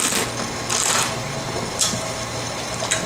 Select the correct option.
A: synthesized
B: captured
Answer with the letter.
B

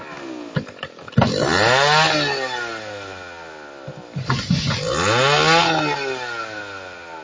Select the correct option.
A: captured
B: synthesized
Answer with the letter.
A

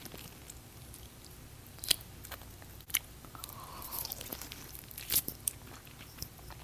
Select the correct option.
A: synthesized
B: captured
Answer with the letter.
A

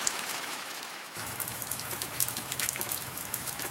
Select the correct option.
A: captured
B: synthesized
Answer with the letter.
B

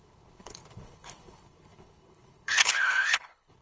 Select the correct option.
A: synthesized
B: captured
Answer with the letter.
A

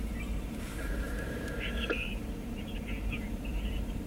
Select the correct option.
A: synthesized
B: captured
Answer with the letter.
A